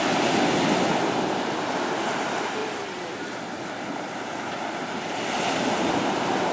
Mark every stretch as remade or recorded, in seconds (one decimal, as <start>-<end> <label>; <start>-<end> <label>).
0.0-6.5 recorded